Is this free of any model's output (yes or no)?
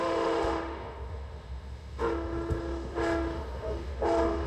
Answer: no